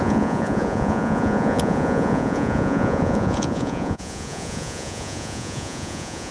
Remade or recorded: remade